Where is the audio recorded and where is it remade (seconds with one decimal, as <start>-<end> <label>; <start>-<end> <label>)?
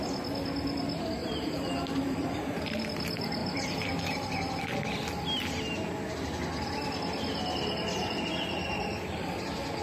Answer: 0.0-1.2 recorded; 1.2-2.7 remade; 2.7-3.4 recorded; 3.4-4.6 remade; 4.6-9.8 recorded